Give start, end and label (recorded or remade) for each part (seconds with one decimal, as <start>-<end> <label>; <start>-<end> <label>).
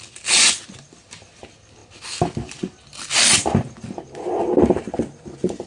0.0-5.7 recorded